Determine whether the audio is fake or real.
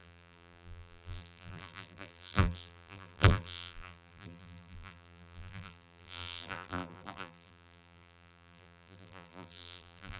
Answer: fake